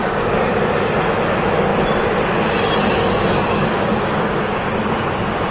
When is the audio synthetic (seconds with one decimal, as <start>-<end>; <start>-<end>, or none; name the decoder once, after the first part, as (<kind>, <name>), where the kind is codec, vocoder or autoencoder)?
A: 0.0-0.5 (codec, DAC); 2.8-4.8